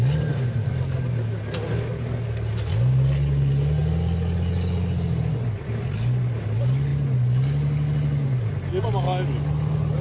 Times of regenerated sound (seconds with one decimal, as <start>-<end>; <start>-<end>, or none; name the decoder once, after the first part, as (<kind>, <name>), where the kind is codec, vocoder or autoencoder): none

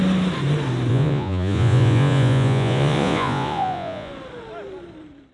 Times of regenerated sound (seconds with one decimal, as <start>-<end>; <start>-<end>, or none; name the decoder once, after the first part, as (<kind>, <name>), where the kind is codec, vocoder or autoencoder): 0.9-4.1 (vocoder, Vocos)

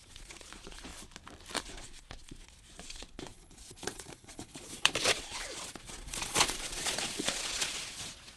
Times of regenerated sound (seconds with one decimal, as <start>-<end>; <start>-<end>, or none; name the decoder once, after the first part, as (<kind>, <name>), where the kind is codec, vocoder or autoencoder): 0.0-0.9 (vocoder, Vocos); 1.6-8.4

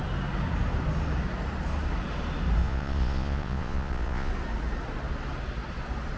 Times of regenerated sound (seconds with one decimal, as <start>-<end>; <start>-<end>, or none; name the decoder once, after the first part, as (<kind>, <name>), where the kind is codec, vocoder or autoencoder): 2.6-4.3 (vocoder, Vocos)